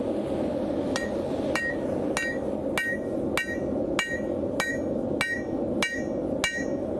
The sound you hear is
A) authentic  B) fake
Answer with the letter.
A